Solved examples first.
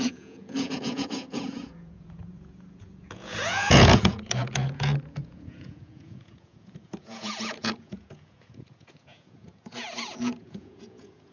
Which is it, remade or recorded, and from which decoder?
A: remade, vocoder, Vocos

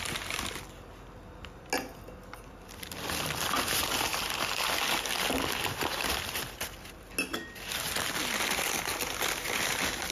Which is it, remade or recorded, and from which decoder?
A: recorded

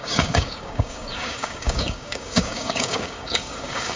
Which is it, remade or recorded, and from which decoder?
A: remade, codec, DAC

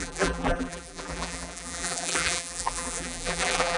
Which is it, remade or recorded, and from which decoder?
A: remade, vocoder, BigVGAN v2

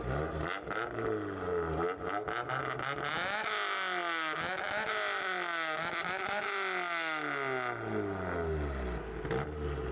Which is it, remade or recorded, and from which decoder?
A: recorded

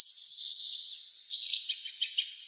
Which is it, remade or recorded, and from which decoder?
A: recorded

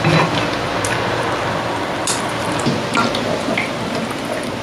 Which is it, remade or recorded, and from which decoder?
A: recorded